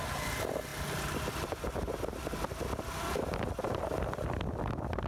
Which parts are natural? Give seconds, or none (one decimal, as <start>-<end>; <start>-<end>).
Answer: 0.0-5.1